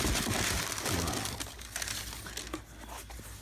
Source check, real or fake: real